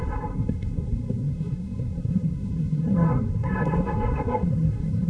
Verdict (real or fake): fake